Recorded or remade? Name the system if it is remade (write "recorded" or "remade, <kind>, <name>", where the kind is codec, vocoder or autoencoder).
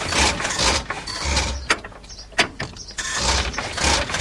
recorded